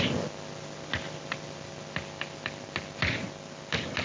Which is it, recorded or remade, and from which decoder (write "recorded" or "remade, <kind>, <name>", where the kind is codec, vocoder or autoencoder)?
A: recorded